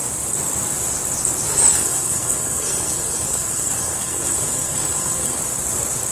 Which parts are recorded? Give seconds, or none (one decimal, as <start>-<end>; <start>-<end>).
0.0-1.7; 5.4-6.1